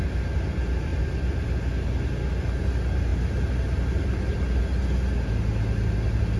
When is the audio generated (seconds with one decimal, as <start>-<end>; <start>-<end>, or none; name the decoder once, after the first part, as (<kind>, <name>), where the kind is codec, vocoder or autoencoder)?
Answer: 0.9-1.4 (vocoder, BigVGAN v2); 3.1-4.6